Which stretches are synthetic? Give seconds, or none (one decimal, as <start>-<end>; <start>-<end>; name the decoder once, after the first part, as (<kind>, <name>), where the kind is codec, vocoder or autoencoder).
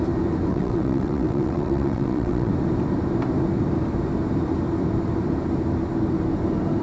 0.5-2.5 (vocoder, WaveNeXt)